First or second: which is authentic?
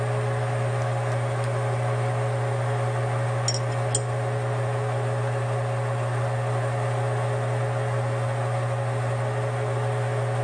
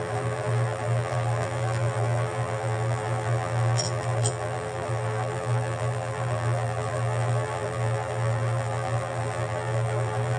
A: first